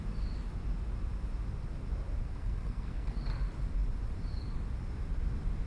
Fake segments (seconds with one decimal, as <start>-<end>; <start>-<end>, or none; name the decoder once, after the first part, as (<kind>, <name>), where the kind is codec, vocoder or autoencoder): 2.2-3.2 (codec, SNAC)